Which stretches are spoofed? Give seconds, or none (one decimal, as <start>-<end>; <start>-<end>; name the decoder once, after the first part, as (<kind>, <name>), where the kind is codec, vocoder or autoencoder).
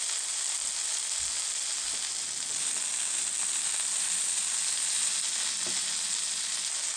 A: none